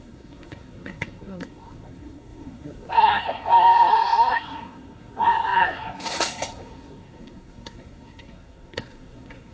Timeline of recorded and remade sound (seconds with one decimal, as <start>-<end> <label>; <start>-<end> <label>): 0.0-9.5 remade